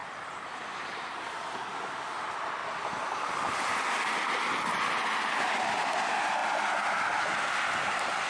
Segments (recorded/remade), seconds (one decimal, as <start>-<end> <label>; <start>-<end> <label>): 0.0-0.6 remade; 0.6-8.3 recorded